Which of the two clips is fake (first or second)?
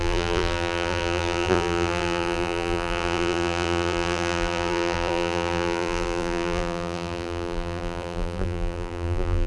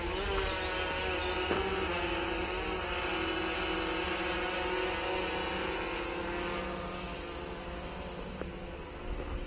first